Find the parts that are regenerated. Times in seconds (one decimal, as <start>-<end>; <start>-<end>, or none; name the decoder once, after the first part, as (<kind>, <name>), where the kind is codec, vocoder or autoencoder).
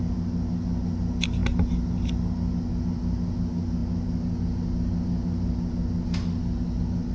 none